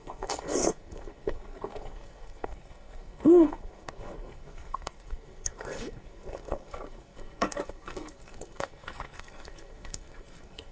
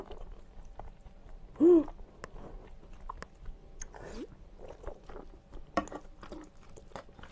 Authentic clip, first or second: second